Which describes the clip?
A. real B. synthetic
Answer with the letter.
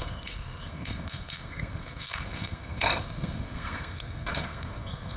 B